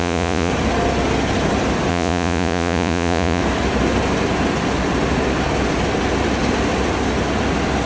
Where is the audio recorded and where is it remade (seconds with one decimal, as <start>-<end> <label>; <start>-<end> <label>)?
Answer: 0.0-0.5 remade; 0.5-1.9 recorded; 1.9-3.4 remade; 3.4-7.9 recorded